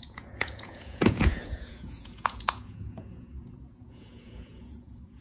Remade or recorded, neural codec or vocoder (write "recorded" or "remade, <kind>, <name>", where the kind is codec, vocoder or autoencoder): remade, vocoder, Vocos